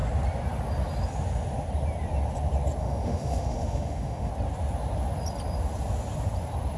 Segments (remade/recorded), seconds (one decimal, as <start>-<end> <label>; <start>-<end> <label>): 0.0-2.8 recorded; 2.8-4.3 remade; 4.3-6.8 recorded